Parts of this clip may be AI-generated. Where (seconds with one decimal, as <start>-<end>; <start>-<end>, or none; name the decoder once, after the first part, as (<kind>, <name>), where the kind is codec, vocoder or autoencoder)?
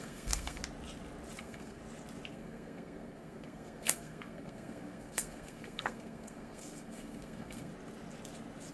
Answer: 0.0-0.6 (codec, SNAC); 1.4-1.8; 2.3-7.7